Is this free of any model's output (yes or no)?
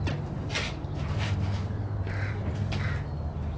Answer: no